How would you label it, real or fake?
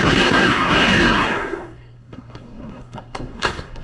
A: fake